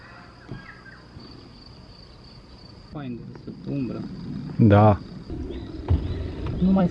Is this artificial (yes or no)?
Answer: yes